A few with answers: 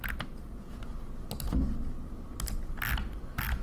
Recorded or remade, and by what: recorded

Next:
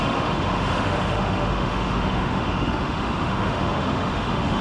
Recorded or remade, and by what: remade, autoencoder, DAC-VAE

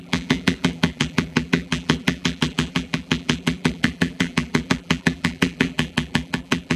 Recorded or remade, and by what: remade, vocoder, BigVGAN v2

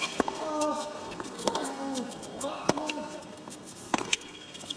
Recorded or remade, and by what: remade, codec, SNAC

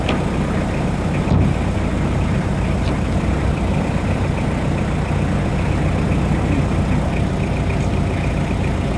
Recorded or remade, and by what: recorded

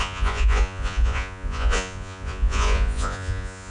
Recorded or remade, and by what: remade, vocoder, Vocos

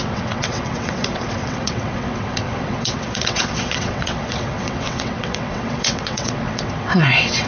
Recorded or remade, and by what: remade, vocoder, WaveNeXt